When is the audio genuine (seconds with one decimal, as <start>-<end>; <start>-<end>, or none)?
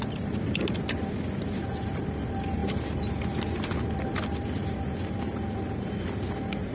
0.0-6.7